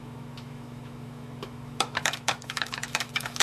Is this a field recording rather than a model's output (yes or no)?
no